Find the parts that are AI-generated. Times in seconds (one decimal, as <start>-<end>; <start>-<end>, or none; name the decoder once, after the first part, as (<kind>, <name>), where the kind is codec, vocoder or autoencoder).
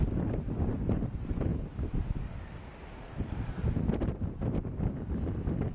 none